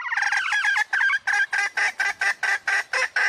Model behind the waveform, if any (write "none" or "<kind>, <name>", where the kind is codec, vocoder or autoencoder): none